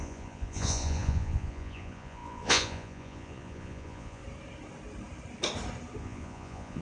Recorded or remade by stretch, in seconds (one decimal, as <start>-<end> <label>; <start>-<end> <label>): 0.0-4.2 remade; 4.2-6.0 recorded; 6.0-6.8 remade